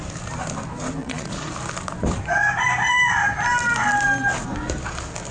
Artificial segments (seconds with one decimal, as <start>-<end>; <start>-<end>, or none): 1.0-1.5